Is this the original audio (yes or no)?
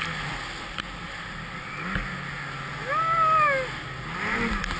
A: yes